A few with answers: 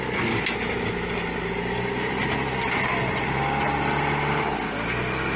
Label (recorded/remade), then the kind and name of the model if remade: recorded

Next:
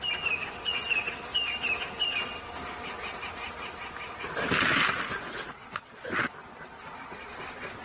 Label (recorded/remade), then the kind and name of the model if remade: recorded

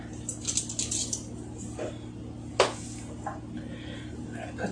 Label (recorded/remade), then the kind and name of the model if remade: recorded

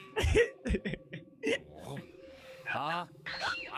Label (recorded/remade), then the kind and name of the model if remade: remade, codec, DAC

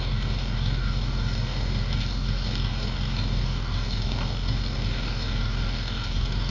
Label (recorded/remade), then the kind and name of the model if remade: remade, codec, DAC